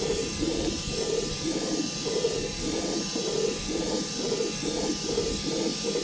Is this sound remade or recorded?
recorded